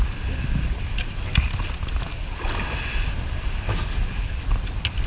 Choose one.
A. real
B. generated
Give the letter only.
A